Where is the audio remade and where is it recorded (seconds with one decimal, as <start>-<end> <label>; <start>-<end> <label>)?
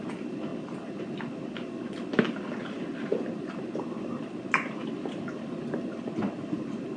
0.0-7.0 recorded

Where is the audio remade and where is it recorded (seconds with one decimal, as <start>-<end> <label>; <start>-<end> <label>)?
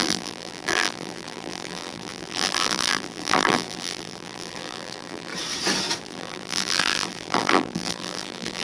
0.0-5.3 remade; 5.3-6.0 recorded; 6.0-8.6 remade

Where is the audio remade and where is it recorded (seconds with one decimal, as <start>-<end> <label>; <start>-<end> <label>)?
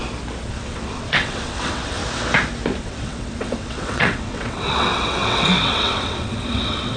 0.0-0.5 recorded; 0.5-2.0 remade; 2.0-2.8 recorded; 2.8-7.0 remade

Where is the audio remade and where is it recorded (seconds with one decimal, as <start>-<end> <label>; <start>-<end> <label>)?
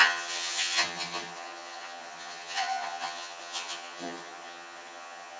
0.0-5.4 remade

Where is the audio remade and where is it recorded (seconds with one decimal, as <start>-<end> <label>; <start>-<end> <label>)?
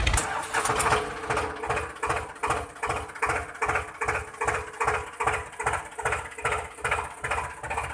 0.0-7.9 recorded